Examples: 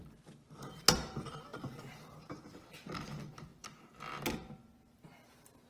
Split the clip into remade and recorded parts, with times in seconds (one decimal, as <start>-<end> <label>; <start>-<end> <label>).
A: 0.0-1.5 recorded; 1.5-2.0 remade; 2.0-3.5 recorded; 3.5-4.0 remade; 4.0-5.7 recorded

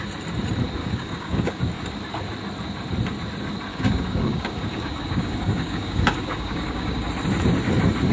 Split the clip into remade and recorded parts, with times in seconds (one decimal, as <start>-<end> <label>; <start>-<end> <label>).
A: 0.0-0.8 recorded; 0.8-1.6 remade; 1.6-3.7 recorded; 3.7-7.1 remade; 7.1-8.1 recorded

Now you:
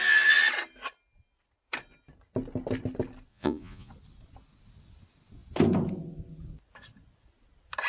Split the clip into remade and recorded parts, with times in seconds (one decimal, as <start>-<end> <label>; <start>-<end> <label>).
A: 0.0-3.3 recorded; 3.3-3.9 remade; 3.9-7.9 recorded

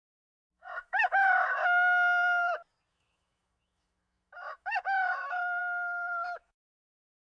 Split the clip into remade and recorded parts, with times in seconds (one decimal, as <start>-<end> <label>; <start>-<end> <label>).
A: 0.0-1.6 remade; 1.6-2.9 recorded; 2.9-7.3 remade

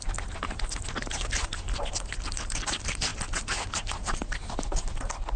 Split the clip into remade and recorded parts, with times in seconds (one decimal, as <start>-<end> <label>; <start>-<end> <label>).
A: 0.0-5.4 recorded

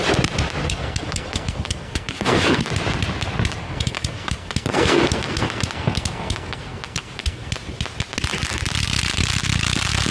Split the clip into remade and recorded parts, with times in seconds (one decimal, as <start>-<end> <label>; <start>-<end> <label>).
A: 0.0-0.6 recorded; 0.6-2.7 remade; 2.7-3.6 recorded; 3.6-7.5 remade; 7.5-10.1 recorded

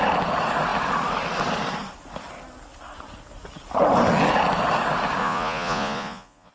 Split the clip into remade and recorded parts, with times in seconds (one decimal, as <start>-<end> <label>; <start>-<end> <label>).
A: 0.0-5.2 recorded; 5.2-6.5 remade

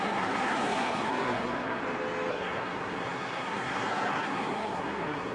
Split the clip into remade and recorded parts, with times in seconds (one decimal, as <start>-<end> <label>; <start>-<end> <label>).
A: 0.0-1.8 remade; 1.8-2.3 recorded; 2.3-5.3 remade